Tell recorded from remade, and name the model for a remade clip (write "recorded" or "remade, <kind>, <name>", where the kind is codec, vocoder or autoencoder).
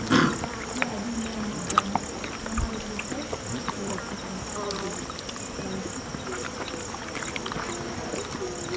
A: recorded